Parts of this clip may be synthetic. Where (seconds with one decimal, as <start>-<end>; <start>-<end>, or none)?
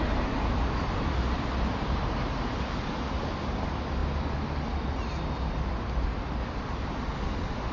none